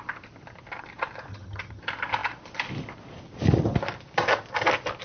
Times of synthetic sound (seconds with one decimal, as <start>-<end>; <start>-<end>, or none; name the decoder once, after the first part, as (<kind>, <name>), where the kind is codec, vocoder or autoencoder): 1.3-1.8 (vocoder, HiFi-GAN)